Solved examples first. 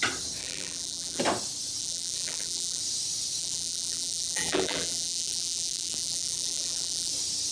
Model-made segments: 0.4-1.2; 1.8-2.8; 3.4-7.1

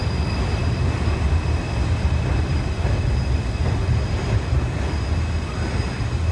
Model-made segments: none

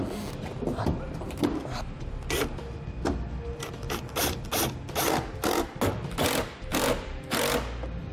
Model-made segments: none

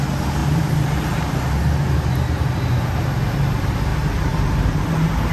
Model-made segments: 0.4-1.6; 3.9-5.3

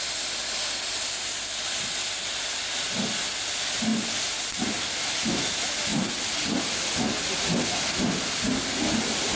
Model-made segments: 3.9-4.6; 5.9-6.6

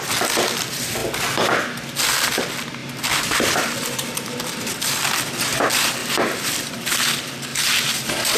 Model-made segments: 2.8-4.9; 6.0-7.0; 7.5-8.4

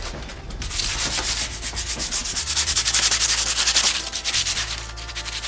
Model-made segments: 2.2-5.1